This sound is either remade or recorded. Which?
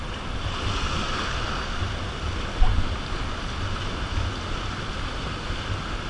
recorded